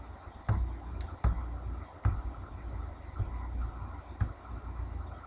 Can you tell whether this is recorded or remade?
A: recorded